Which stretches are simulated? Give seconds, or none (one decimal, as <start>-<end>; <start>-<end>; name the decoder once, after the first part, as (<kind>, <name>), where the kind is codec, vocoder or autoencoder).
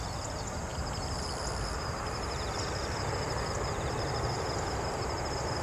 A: none